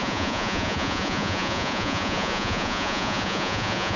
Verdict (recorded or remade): remade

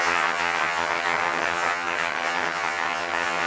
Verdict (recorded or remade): remade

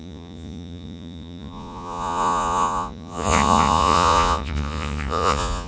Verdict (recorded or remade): remade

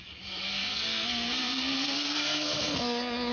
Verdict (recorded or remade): remade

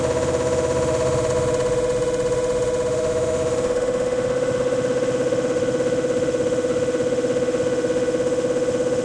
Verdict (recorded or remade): remade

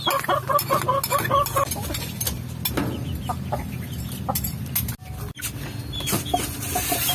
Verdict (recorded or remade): recorded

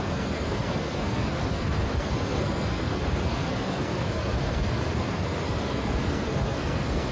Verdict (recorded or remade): remade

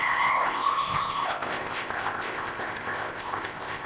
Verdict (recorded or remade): remade